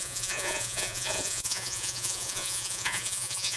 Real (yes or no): no